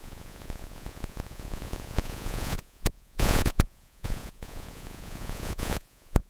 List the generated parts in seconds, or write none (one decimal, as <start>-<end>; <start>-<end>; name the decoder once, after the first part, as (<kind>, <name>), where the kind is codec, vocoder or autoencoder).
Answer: 0.0-6.3 (vocoder, Vocos)